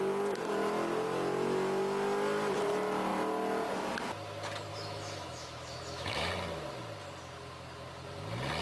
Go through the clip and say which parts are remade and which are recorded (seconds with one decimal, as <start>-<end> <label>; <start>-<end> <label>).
0.0-4.7 recorded; 4.7-6.3 remade; 6.3-8.6 recorded